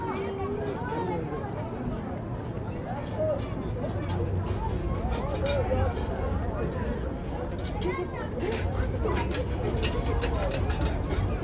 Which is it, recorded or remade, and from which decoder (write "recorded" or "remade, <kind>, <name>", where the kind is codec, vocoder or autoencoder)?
recorded